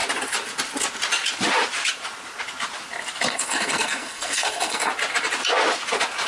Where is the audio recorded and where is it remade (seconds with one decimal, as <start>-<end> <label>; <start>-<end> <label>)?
0.0-3.3 recorded; 3.3-4.9 remade; 4.9-6.3 recorded